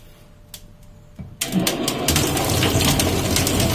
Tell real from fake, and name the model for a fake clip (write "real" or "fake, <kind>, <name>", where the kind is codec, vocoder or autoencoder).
real